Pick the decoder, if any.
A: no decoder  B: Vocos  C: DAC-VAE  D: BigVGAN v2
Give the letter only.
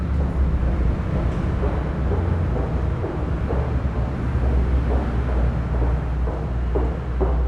A